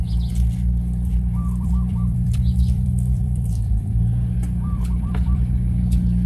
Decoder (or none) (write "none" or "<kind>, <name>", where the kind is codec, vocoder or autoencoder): vocoder, BigVGAN v2